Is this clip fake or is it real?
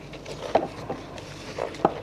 real